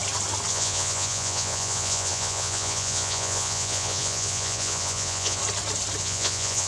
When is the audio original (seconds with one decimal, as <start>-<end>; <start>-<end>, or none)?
0.0-0.5; 5.4-6.0

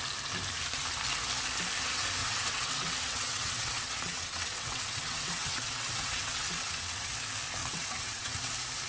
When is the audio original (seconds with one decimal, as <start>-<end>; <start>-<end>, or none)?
0.0-2.2; 7.1-7.6; 8.5-8.9

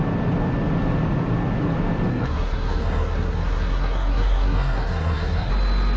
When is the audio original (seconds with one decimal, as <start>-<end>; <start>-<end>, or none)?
0.0-2.1; 5.5-6.0

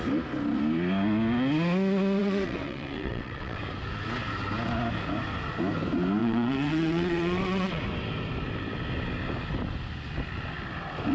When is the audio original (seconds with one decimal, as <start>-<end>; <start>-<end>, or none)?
0.0-2.2; 3.6-6.2; 7.8-11.1